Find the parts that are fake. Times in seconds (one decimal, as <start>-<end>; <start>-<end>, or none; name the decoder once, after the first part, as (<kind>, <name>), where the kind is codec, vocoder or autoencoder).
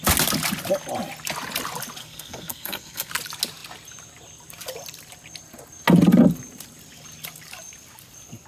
2.0-3.1 (codec, SNAC)